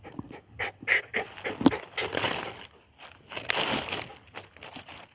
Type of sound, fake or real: real